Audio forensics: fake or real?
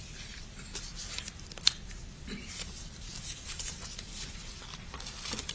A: fake